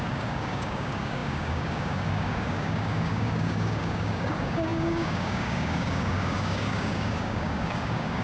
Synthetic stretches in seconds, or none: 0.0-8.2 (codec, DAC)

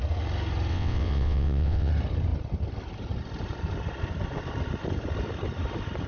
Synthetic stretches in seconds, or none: 0.7-1.9 (vocoder, WaveNeXt)